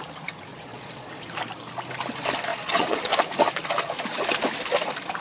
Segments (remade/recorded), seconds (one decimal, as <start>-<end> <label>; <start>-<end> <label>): 0.0-0.5 recorded; 0.5-1.1 remade; 1.1-2.5 recorded; 2.5-3.2 remade; 3.2-5.2 recorded